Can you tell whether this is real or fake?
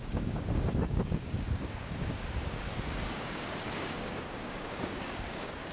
fake